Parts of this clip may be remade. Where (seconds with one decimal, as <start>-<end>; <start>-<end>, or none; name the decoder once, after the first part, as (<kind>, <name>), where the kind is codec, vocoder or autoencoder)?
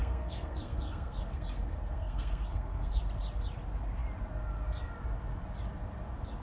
0.0-3.0 (codec, SNAC)